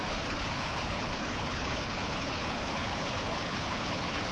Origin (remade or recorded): remade